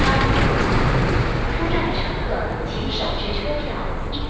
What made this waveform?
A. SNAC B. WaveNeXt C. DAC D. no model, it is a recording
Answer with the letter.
D